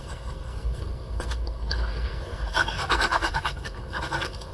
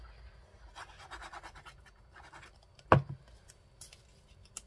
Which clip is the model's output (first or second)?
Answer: first